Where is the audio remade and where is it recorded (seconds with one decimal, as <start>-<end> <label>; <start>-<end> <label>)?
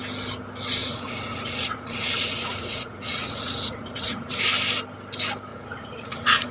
0.0-0.8 recorded; 0.8-4.4 remade; 4.4-5.5 recorded; 5.5-6.5 remade